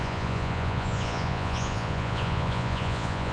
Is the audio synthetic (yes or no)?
yes